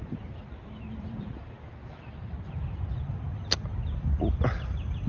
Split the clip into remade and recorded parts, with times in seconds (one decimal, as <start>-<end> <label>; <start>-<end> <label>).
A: 0.0-3.1 remade; 3.1-5.1 recorded